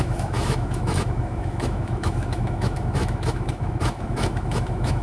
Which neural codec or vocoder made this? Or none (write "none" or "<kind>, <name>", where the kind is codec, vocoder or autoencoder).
autoencoder, DAC-VAE